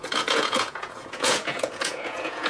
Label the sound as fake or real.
fake